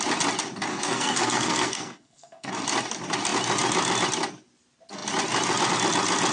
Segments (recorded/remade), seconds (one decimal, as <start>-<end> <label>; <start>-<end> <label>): 0.0-0.7 recorded; 0.7-2.5 remade; 2.5-6.3 recorded